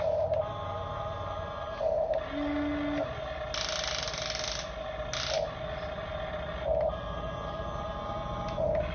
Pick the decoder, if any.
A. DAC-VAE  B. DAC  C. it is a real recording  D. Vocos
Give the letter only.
C